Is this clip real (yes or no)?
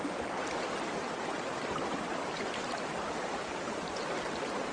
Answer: yes